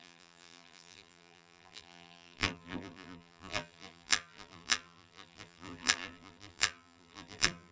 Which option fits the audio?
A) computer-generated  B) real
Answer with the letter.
A